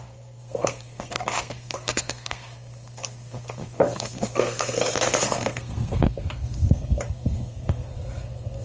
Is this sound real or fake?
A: fake